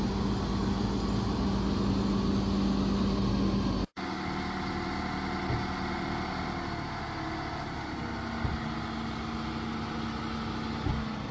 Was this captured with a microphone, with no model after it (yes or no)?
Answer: yes